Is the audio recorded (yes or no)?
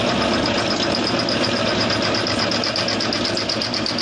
yes